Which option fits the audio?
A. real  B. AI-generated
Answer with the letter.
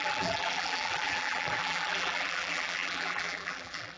B